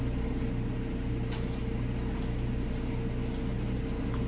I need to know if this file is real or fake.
real